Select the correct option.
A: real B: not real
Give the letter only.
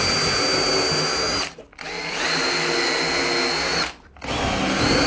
A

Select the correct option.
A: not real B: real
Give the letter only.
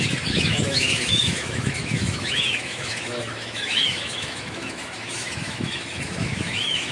A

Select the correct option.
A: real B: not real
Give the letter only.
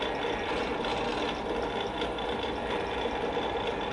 A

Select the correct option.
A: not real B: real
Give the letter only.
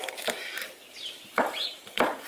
A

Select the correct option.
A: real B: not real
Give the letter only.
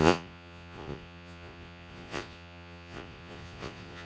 B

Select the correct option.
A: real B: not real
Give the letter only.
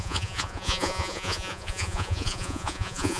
B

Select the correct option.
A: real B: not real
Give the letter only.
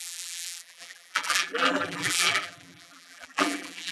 B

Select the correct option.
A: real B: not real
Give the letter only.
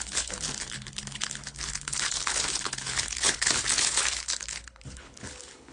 B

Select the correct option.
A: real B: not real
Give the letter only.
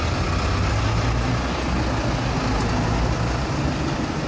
A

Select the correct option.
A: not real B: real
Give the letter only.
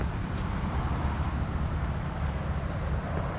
A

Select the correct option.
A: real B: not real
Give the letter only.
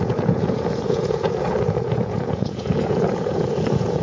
B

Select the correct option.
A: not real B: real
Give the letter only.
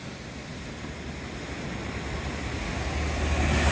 B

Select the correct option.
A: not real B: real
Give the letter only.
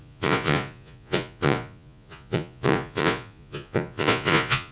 A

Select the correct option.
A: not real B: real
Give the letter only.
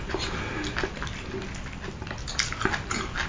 B